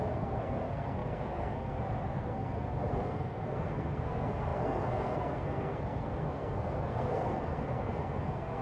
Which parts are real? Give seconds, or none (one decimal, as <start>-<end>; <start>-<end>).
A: none

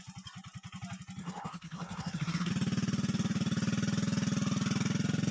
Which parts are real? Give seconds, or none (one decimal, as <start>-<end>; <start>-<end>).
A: 0.0-1.2; 2.5-5.3

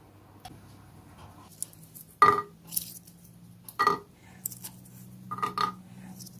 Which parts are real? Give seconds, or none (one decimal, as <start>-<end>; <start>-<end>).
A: 0.0-6.4

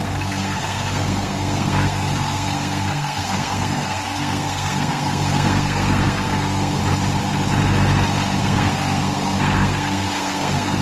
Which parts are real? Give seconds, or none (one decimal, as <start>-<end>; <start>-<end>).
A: 6.8-8.4

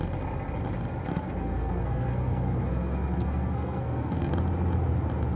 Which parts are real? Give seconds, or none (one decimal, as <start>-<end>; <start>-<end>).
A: 0.0-1.1; 4.3-5.4

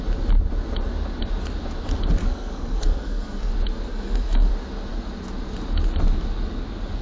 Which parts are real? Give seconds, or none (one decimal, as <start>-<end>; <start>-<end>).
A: 0.0-2.2; 3.5-3.9; 4.5-7.0